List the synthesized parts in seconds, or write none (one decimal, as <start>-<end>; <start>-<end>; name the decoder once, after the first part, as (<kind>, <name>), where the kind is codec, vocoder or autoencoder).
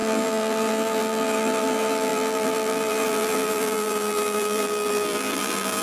0.0-5.8 (vocoder, BigVGAN v2)